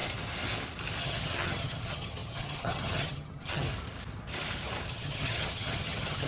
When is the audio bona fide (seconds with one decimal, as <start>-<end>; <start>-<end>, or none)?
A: 0.0-1.0; 3.7-4.9

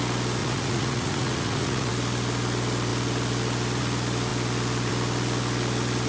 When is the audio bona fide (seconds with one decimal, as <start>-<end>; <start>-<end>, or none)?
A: 0.0-0.4; 1.9-6.1

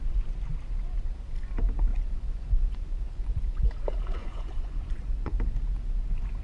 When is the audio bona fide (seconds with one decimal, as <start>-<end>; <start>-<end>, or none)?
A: 0.0-1.9; 3.7-4.2; 5.3-6.4

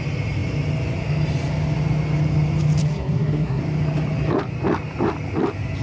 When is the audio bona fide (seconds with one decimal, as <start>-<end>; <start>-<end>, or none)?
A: 0.0-2.8; 3.6-5.8

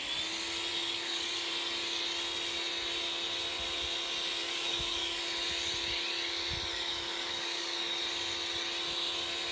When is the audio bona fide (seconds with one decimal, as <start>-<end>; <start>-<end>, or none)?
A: 0.0-0.7; 1.5-4.4; 5.2-6.7; 8.0-9.5

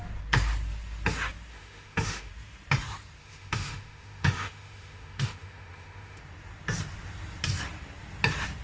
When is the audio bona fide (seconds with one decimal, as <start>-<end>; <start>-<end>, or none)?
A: 0.0-1.5; 2.3-3.2; 6.2-8.6

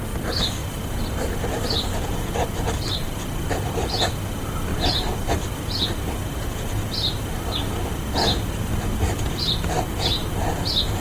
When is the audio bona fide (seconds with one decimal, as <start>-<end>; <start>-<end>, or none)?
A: 0.0-0.6; 3.1-4.7; 5.5-11.0

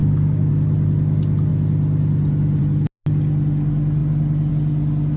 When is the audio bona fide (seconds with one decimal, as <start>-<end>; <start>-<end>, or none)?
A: 0.5-5.2